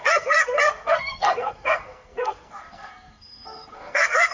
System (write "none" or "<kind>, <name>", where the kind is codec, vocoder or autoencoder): codec, SNAC